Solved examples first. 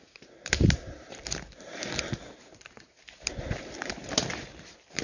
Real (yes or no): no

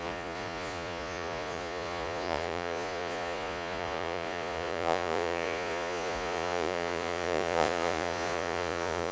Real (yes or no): no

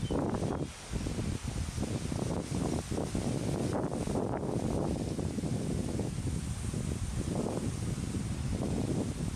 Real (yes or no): yes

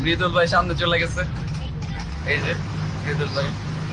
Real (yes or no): yes